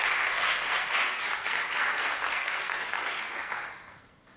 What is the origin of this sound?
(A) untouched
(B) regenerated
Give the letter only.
B